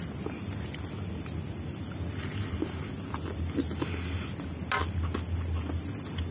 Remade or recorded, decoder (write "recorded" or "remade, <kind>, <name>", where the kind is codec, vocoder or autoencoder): recorded